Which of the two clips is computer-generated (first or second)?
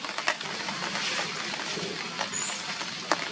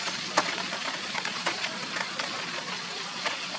second